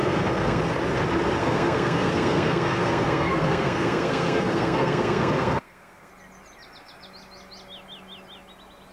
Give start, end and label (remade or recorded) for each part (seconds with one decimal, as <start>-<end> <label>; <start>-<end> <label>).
0.0-0.6 remade; 0.6-1.4 recorded; 1.4-6.1 remade; 6.1-8.9 recorded